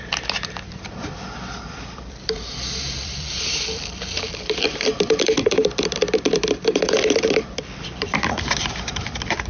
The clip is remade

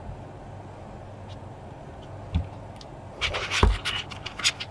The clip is recorded